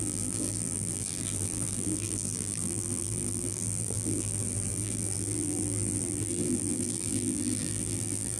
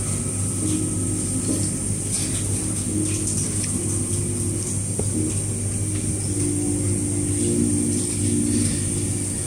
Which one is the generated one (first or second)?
first